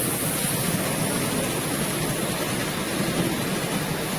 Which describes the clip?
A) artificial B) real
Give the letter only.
B